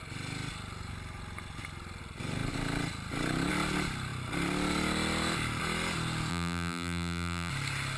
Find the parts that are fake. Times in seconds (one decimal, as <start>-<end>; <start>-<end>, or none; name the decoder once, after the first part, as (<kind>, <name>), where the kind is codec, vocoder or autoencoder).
6.3-7.5 (vocoder, BigVGAN v2)